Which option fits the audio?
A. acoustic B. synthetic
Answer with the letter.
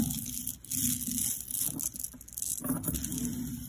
A